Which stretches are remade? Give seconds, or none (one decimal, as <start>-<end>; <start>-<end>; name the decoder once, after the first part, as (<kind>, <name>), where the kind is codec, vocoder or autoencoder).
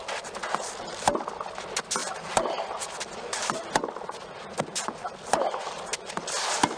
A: none